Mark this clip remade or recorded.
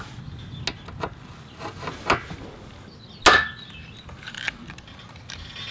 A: recorded